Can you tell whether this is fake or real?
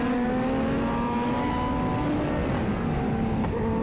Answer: real